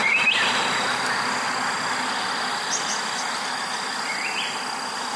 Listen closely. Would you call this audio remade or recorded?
remade